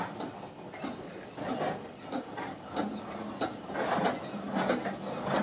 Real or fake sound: real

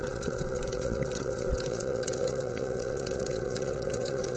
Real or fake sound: fake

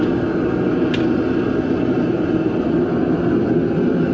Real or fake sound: real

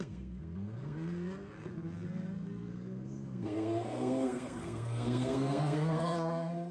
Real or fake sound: fake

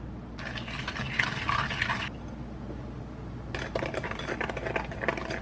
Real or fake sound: real